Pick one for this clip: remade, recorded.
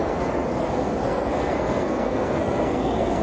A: remade